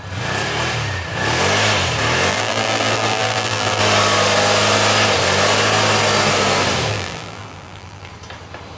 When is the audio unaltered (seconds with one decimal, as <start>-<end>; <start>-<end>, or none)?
0.0-2.3; 3.8-6.9; 8.1-8.8